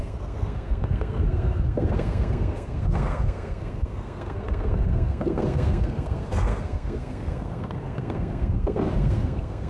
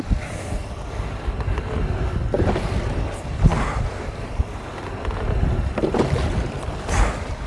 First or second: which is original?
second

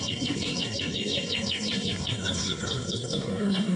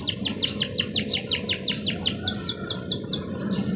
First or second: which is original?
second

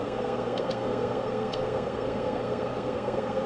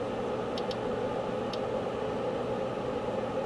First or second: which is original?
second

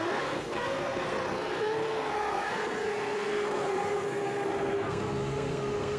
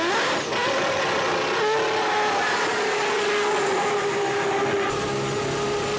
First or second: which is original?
second